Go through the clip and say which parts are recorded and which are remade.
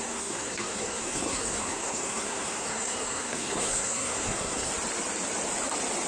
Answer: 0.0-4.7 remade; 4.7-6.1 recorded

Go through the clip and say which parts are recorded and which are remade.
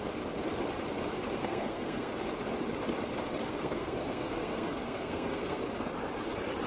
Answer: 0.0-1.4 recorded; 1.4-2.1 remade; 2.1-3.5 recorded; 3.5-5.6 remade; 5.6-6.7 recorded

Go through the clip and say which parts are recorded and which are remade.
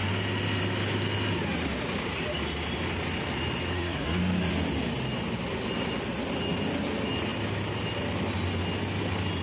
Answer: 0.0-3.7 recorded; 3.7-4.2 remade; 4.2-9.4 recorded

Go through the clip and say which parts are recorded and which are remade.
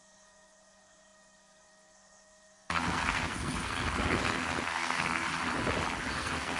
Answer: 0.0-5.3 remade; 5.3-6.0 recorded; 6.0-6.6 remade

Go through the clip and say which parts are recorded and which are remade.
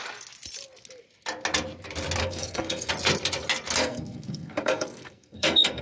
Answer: 0.0-2.2 recorded; 2.2-2.9 remade; 2.9-3.8 recorded; 3.8-5.8 remade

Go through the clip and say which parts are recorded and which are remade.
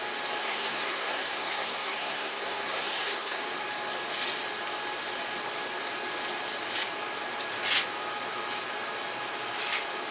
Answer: 0.0-0.4 recorded; 0.4-3.4 remade; 3.4-10.1 recorded